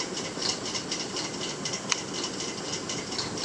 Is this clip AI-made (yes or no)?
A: no